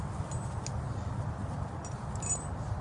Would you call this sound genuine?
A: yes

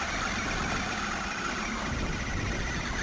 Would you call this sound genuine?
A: yes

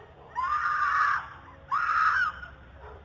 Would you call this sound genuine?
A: yes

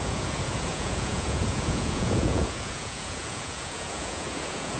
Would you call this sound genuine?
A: no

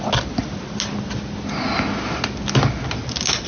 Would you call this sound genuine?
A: yes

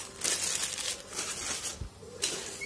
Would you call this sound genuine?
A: yes